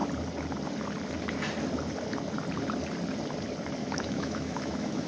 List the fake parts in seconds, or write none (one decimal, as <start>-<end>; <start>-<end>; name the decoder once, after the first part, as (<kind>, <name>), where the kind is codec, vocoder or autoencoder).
3.8-5.1 (autoencoder, DAC-VAE)